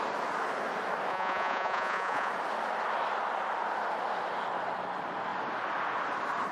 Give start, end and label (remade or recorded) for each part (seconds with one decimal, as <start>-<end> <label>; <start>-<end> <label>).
0.0-1.1 recorded; 1.1-2.3 remade; 2.3-6.5 recorded